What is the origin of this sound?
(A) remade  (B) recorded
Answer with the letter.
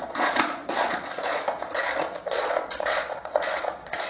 A